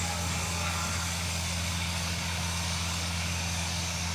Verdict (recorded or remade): remade